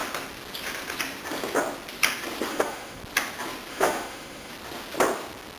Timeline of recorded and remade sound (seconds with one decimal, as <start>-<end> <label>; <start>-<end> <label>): 0.0-2.5 recorded; 2.5-3.0 remade; 3.0-3.7 recorded; 3.7-4.5 remade; 4.5-5.6 recorded

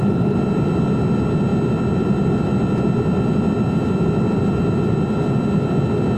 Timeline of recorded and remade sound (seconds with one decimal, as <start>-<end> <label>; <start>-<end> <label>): 0.0-6.2 recorded

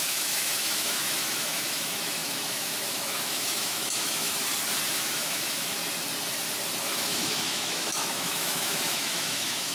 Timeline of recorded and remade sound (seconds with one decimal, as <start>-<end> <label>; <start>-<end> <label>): 0.0-4.4 remade; 4.4-4.9 recorded; 4.9-5.8 remade; 5.8-6.8 recorded; 6.8-9.7 remade

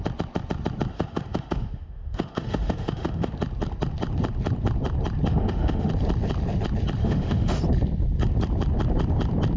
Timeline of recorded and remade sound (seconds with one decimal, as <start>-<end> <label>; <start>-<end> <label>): 0.0-0.9 recorded; 0.9-3.3 remade; 3.3-5.3 recorded; 5.3-5.9 remade; 5.9-7.0 recorded; 7.0-7.6 remade; 7.6-9.6 recorded

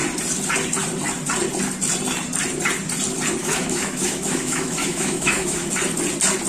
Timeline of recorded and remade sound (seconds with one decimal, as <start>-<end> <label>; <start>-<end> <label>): 0.0-3.4 recorded; 3.4-5.7 remade; 5.7-6.5 recorded

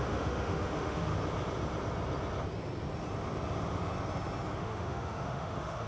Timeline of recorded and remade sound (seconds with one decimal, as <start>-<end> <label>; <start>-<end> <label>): 0.0-1.1 remade; 1.1-4.6 recorded; 4.6-5.9 remade

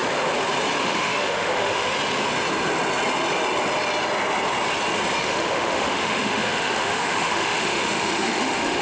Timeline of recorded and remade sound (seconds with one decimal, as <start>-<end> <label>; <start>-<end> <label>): 0.0-0.8 recorded; 0.8-1.9 remade; 1.9-5.2 recorded; 5.2-8.8 remade